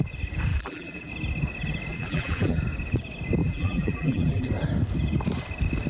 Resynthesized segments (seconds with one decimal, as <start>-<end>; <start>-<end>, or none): 0.5-1.1; 1.9-2.6; 3.4-4.5